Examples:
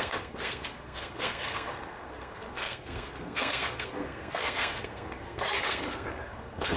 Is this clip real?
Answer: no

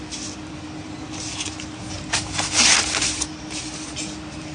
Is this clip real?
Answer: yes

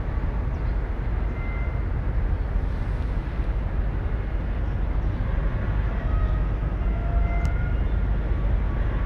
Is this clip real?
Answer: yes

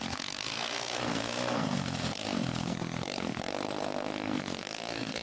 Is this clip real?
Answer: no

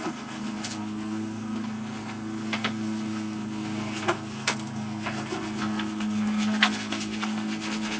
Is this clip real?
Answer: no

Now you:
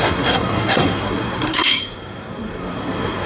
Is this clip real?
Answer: no